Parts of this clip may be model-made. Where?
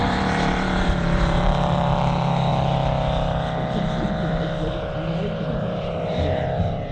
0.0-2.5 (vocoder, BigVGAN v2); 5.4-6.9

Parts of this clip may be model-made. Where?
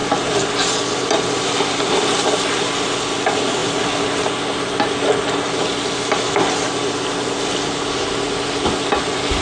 none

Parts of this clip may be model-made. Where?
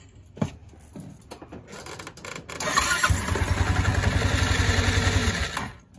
none